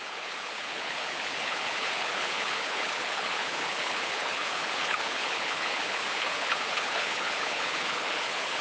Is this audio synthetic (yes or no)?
yes